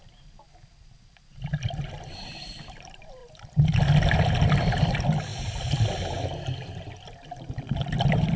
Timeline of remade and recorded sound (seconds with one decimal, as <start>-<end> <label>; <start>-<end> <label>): 0.0-8.4 recorded